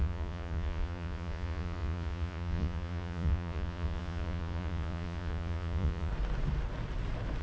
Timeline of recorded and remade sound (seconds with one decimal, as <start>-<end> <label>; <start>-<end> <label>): 0.0-6.1 remade; 6.1-7.4 recorded